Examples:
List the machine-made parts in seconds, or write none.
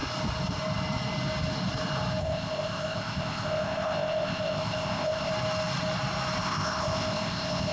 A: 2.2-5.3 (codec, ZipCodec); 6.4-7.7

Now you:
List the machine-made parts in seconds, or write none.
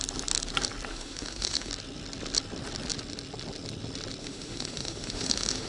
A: 0.9-1.7 (autoencoder, DAC-VAE); 4.2-5.7